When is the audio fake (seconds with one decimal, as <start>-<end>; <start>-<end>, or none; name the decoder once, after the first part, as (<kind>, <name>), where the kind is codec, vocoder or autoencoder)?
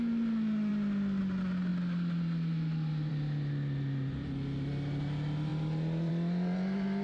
none